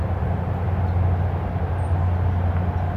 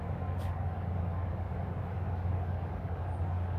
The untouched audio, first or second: first